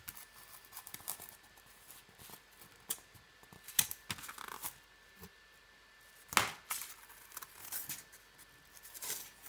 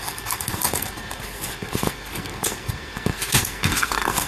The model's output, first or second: second